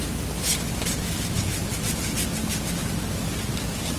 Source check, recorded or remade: recorded